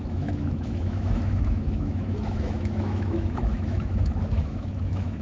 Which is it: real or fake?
fake